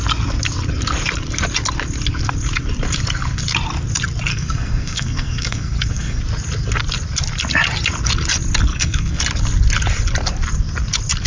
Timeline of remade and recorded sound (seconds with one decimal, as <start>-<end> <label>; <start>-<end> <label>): 0.0-4.3 recorded; 4.3-6.2 remade; 6.2-8.7 recorded; 8.7-9.2 remade; 9.2-11.3 recorded